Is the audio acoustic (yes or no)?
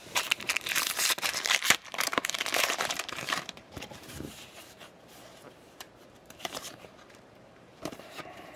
no